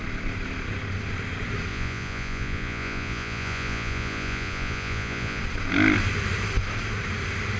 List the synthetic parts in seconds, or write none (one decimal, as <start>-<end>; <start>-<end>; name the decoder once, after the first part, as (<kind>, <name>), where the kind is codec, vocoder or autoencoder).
1.7-5.4 (vocoder, Vocos)